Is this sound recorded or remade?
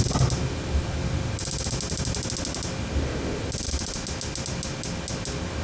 recorded